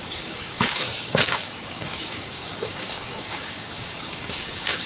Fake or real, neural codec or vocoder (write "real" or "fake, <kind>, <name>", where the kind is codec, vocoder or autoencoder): fake, codec, DAC